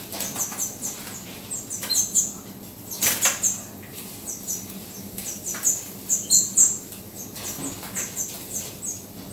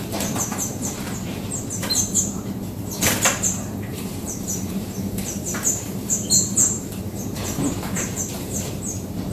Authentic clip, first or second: first